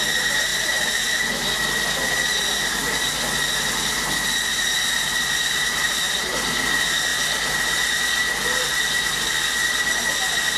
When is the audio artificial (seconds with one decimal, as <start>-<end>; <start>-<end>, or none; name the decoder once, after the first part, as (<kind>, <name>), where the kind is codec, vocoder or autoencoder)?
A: 0.5-1.5 (vocoder, BigVGAN v2); 4.5-6.3